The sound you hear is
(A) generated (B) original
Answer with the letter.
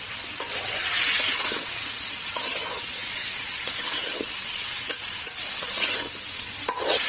A